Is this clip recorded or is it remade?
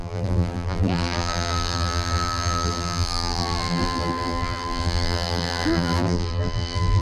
remade